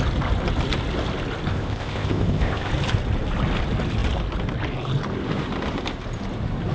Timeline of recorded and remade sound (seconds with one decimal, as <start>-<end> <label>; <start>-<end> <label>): 0.0-1.5 recorded; 1.5-2.7 remade; 2.7-6.7 recorded